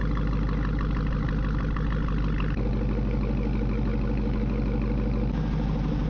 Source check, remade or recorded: recorded